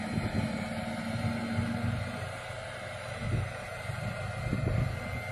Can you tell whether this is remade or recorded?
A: recorded